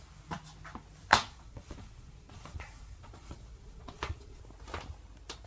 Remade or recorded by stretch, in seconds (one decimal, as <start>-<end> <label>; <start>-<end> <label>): 0.0-1.1 recorded; 1.1-4.4 remade; 4.4-5.5 recorded